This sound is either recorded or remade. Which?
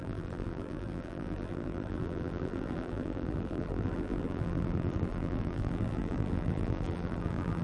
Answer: remade